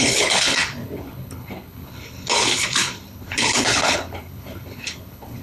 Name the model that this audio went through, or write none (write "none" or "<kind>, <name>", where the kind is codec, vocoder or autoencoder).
codec, HILCodec